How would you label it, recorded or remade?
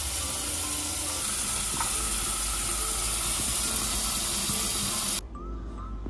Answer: recorded